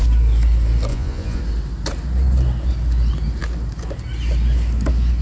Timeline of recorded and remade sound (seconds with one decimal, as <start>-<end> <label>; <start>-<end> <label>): 0.0-0.9 recorded; 0.9-1.4 remade; 1.4-5.2 recorded

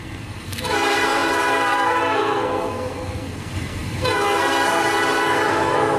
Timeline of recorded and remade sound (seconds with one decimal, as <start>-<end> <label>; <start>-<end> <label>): 0.0-6.0 remade

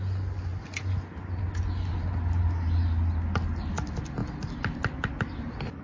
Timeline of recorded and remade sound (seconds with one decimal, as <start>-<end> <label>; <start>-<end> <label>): 0.0-5.8 recorded

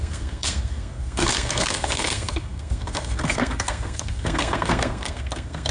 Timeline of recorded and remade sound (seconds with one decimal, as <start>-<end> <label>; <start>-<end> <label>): 0.0-5.7 remade

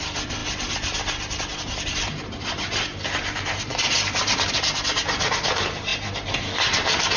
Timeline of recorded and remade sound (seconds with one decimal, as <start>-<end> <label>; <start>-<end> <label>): 0.0-7.2 recorded

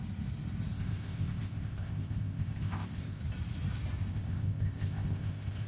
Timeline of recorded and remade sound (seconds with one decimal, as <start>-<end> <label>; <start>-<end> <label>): 0.0-0.7 recorded; 0.7-3.2 remade; 3.2-4.1 recorded; 4.1-5.7 remade

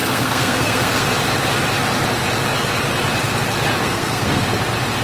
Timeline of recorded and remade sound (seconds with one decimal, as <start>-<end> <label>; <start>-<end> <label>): 0.0-1.1 remade; 1.1-3.8 recorded; 3.8-4.4 remade; 4.4-5.0 recorded